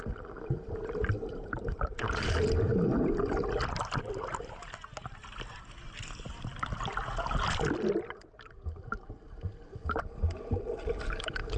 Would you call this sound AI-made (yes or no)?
no